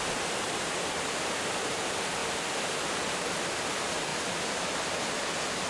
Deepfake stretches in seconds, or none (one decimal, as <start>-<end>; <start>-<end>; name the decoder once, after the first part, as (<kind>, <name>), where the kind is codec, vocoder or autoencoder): none